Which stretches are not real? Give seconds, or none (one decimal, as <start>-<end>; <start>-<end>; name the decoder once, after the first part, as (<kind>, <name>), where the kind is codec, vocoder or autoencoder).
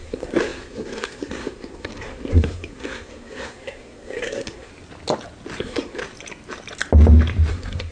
0.0-4.7 (codec, SNAC); 5.6-6.0; 7.5-7.9